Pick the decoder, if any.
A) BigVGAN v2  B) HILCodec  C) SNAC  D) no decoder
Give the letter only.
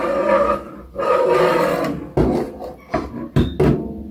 D